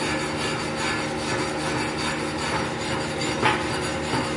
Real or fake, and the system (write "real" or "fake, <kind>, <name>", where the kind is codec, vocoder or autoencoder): real